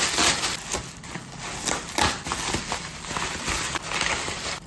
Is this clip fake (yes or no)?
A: no